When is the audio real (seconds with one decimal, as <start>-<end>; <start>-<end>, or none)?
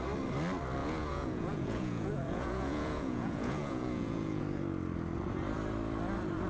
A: 0.0-0.8; 4.4-6.5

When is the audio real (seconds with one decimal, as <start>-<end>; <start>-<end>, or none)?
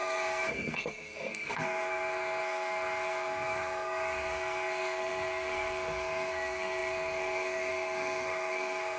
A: none